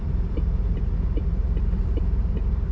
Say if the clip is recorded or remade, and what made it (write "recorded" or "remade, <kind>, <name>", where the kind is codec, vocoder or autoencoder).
remade, vocoder, BigVGAN v2